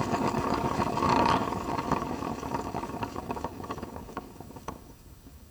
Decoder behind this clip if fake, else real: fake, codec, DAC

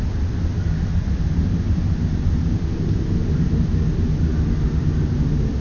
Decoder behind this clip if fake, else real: real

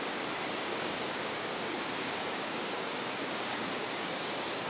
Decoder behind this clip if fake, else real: fake, codec, DAC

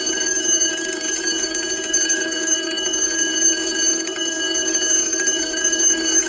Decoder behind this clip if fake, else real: fake, codec, DAC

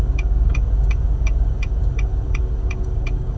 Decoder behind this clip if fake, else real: fake, codec, DAC